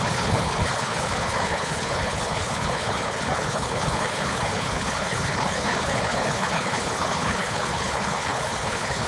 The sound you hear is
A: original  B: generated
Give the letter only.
B